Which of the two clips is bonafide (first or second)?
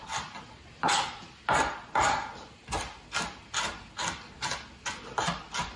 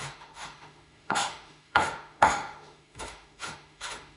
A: first